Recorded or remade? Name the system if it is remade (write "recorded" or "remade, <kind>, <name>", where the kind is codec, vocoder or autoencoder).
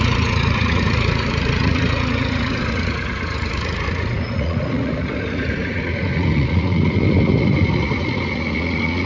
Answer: remade, vocoder, Vocos